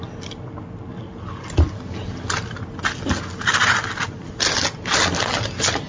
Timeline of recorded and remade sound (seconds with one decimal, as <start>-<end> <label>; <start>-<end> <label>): 0.0-5.9 recorded